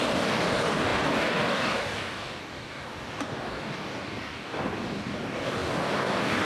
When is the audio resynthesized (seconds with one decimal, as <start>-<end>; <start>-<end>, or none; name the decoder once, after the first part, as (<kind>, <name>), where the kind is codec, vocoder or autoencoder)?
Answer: 0.0-6.4 (codec, DAC)